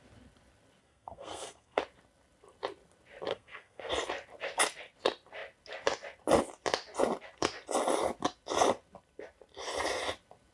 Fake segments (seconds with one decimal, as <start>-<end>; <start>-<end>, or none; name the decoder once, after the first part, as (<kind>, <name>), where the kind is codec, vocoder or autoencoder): 0.8-1.8 (codec, SNAC); 3.3-3.9